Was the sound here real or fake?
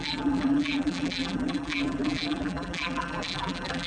fake